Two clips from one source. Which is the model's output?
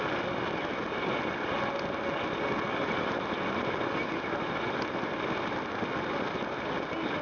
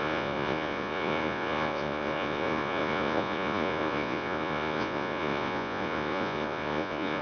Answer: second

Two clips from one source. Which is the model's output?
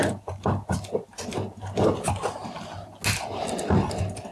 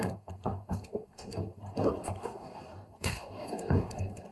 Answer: second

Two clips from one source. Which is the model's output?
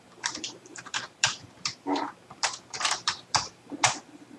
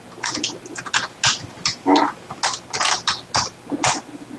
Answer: first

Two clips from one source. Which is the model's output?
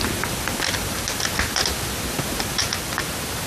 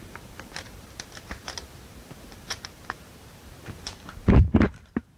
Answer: second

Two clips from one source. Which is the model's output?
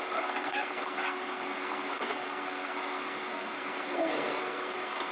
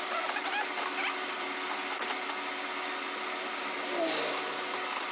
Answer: first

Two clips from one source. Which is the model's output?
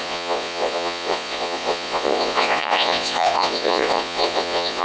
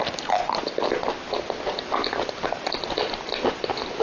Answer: first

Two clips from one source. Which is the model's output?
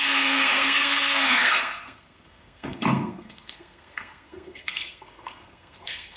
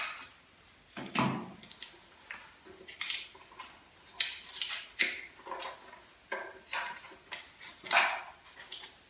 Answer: first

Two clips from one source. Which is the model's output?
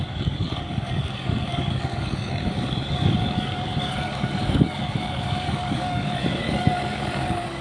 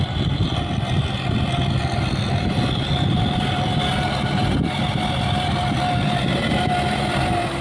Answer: first